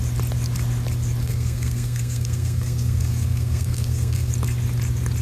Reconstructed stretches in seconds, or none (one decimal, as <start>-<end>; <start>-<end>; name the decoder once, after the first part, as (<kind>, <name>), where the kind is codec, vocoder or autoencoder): 1.2-4.3 (codec, SNAC)